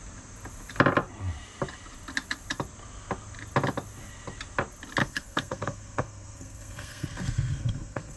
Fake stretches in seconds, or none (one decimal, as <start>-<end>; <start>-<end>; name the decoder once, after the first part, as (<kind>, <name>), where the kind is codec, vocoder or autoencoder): 5.0-8.2 (codec, SNAC)